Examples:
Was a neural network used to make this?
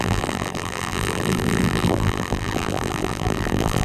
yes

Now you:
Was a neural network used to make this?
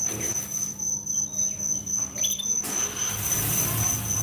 no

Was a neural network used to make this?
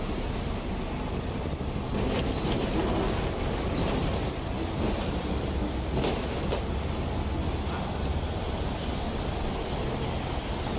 no